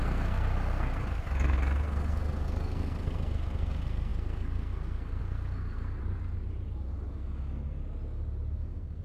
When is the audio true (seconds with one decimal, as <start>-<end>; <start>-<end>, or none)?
6.0-7.1; 7.8-8.6